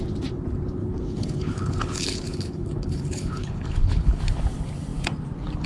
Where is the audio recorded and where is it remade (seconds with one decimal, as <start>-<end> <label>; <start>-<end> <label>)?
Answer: 0.0-0.8 recorded; 0.8-4.2 remade; 4.2-5.7 recorded